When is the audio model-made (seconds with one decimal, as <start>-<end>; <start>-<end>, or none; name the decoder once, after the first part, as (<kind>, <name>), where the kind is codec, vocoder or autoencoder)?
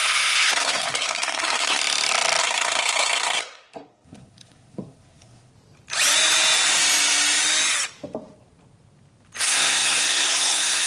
0.0-1.8 (codec, SNAC); 2.4-5.5; 9.4-10.9